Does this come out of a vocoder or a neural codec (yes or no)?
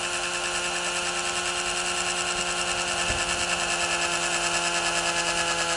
no